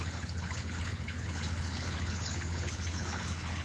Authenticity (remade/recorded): remade